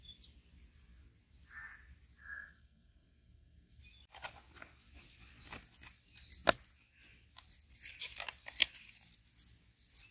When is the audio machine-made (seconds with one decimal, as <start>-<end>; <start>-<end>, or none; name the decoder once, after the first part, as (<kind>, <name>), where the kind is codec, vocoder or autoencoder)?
2.2-3.8 (codec, SNAC)